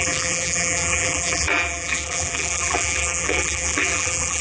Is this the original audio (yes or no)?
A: no